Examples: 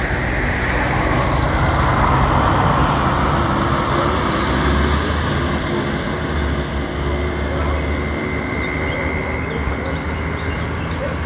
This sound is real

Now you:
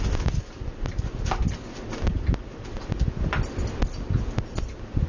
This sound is real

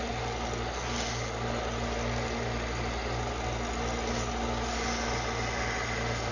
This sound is real